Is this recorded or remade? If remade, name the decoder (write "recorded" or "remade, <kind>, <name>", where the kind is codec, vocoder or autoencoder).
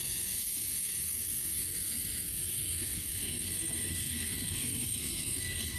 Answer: remade, codec, SNAC